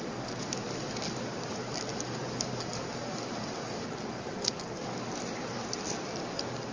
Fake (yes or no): no